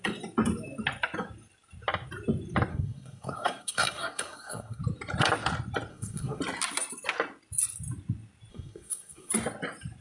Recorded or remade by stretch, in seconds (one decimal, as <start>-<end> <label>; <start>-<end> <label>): 0.0-2.7 recorded; 2.7-4.8 remade; 4.8-5.9 recorded; 5.9-6.4 remade; 6.4-8.5 recorded; 8.5-9.3 remade; 9.3-10.0 recorded